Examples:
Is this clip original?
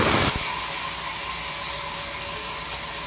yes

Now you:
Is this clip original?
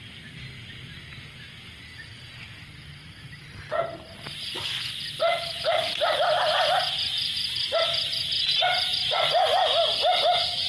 yes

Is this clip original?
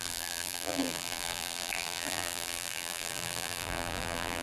no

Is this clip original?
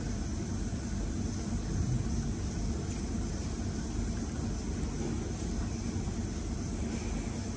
yes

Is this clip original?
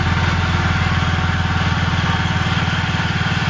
yes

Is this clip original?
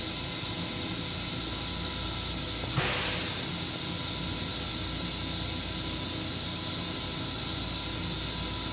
yes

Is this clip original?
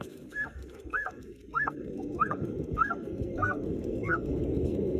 no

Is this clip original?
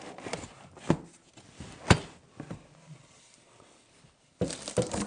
yes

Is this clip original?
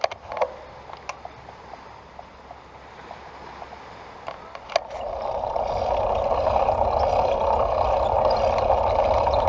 yes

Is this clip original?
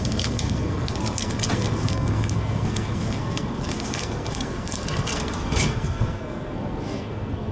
no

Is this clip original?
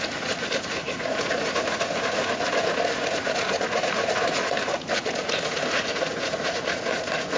no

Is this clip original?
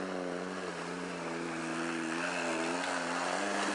yes